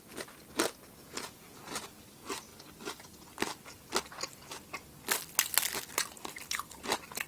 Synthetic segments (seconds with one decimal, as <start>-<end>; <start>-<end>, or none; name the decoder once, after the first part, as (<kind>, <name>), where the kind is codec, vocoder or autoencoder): 0.7-1.6 (vocoder, Vocos)